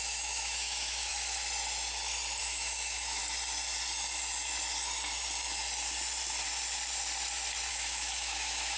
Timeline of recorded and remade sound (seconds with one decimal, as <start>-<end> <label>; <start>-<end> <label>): 0.0-1.1 remade; 1.1-2.4 recorded; 2.4-3.2 remade; 3.2-7.7 recorded; 7.7-8.8 remade